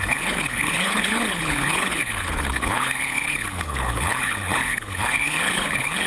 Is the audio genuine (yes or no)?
no